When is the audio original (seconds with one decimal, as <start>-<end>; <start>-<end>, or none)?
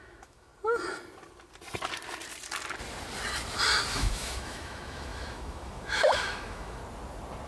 0.5-3.9; 6.8-7.5